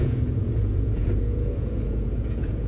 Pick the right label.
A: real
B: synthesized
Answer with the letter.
B